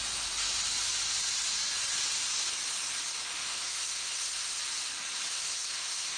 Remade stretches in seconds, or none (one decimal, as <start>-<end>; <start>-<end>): 3.4-4.6; 5.3-6.2

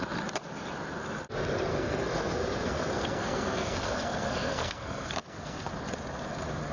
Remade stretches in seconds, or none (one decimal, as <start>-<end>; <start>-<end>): 1.7-5.7

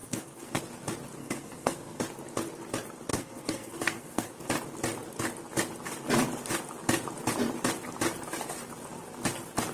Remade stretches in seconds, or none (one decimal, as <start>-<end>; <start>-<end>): 0.0-0.6; 1.2-2.0; 3.1-4.3